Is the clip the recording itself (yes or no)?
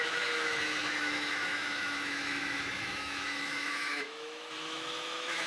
no